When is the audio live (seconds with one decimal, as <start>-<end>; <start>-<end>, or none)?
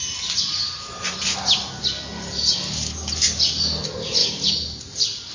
0.0-5.3